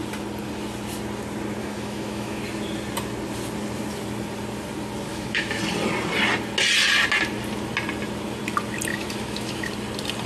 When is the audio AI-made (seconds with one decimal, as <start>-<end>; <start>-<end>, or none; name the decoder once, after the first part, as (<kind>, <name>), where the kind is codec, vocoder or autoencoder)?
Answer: 1.6-2.4 (autoencoder, DAC-VAE); 5.1-5.6; 8.9-9.7